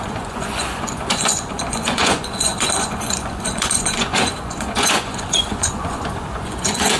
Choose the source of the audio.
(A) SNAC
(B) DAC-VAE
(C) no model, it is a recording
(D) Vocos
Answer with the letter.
D